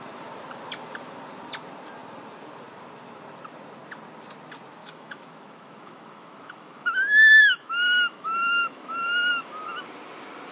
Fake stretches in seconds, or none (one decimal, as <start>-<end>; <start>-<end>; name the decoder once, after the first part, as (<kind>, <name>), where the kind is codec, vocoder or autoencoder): 4.8-9.3 (autoencoder, DAC-VAE)